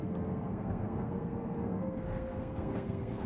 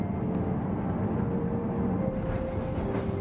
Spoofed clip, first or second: first